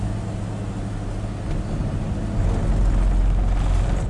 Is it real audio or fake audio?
real